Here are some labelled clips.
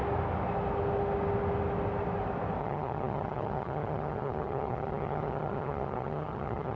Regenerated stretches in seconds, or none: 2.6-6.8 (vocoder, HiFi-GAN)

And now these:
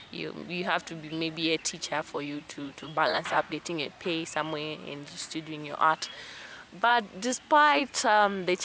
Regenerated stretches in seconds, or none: 1.9-3.9 (vocoder, Vocos)

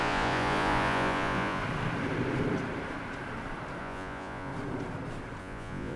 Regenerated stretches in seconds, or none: 0.0-1.6 (vocoder, Vocos); 3.8-4.5; 5.4-6.0

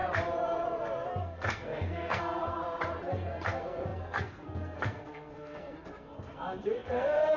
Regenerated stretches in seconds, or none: 1.2-2.6 (codec, SNAC); 3.1-7.4

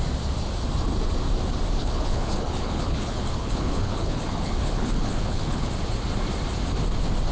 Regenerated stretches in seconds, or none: 1.8-5.7 (codec, HILCodec)